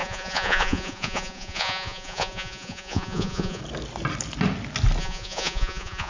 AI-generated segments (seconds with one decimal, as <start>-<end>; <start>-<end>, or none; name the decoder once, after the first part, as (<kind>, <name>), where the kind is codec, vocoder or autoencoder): 0.0-3.6 (vocoder, Vocos); 5.0-6.1

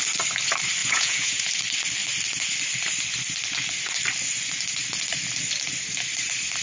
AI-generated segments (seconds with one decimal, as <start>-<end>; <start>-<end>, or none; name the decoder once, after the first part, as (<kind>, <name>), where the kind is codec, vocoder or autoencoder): 0.8-1.4 (vocoder, Vocos)

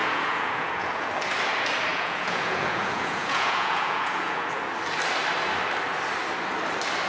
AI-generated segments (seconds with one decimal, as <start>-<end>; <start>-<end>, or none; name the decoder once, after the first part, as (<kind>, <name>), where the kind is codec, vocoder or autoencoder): 0.0-1.1 (vocoder, Vocos); 1.9-4.6

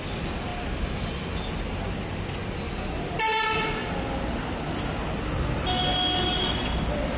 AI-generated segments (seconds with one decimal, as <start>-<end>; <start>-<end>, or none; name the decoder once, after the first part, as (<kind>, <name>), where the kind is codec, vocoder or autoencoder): none

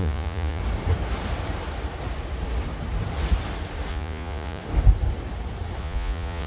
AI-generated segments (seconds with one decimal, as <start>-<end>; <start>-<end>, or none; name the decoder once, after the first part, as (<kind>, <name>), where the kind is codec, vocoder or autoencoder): 0.0-0.6 (vocoder, Vocos); 3.9-4.6; 5.8-6.5

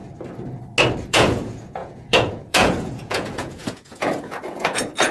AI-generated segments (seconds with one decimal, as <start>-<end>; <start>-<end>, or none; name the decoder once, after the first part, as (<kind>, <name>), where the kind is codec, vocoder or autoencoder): 1.1-5.1 (vocoder, Vocos)